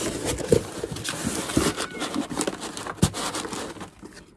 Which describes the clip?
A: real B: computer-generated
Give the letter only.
A